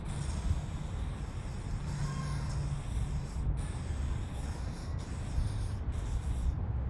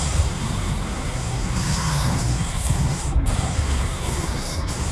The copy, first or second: second